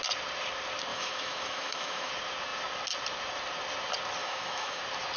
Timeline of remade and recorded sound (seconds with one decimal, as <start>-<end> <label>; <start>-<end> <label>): 0.0-0.9 recorded; 0.9-2.1 remade; 2.1-4.2 recorded; 4.2-4.8 remade; 4.8-5.2 recorded